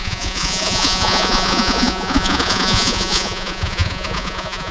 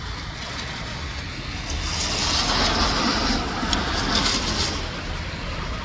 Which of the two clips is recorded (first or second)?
second